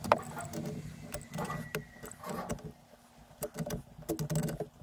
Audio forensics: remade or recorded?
recorded